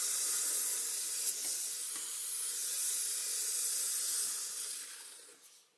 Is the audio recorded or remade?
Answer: recorded